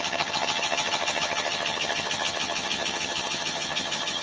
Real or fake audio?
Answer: fake